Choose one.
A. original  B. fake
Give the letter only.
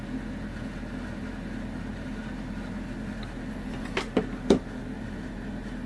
A